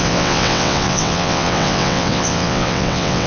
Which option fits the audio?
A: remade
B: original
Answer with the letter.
A